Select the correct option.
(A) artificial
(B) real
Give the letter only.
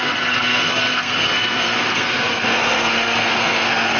A